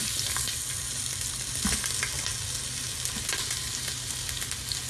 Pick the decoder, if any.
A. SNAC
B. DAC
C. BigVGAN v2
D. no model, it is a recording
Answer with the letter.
D